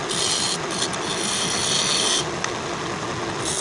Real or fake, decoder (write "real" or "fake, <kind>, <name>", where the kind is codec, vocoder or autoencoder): real